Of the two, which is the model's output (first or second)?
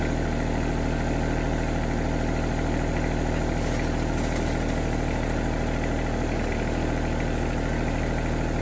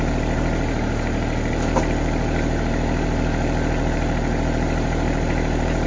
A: second